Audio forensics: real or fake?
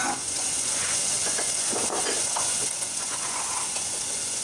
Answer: fake